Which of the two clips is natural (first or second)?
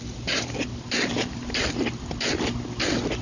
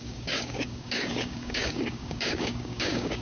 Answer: first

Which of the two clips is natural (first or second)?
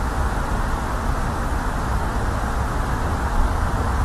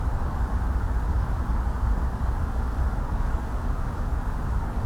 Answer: first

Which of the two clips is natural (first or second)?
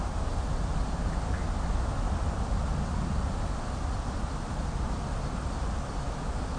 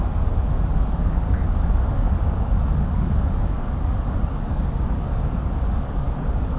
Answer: first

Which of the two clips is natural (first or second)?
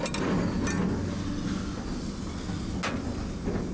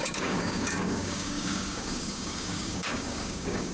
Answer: first